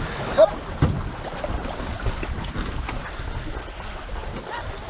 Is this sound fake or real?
real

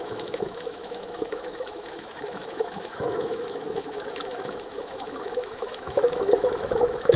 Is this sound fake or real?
fake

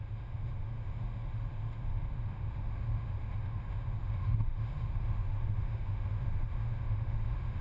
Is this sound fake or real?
fake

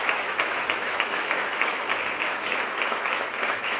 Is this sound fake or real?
fake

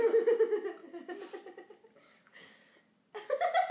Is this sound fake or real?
real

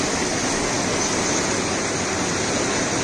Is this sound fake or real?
real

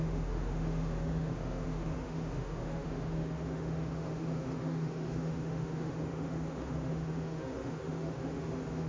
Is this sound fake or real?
fake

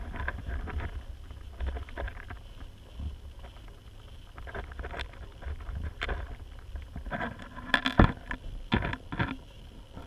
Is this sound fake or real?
real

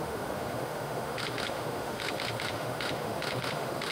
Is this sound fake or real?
fake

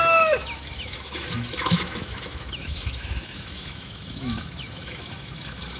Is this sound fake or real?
fake